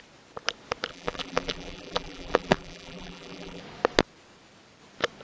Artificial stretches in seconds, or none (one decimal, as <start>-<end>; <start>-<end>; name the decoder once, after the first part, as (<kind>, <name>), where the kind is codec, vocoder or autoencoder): 0.9-3.6 (vocoder, BigVGAN v2)